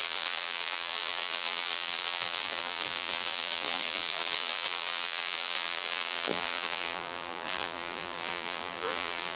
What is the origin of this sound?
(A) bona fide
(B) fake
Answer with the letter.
B